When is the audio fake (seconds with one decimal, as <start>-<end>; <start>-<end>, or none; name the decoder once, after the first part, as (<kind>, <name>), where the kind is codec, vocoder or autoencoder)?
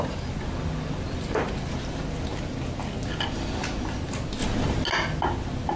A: none